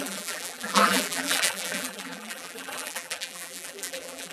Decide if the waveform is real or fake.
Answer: fake